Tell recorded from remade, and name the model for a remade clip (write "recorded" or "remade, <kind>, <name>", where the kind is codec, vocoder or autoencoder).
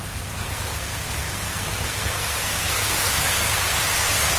remade, codec, SNAC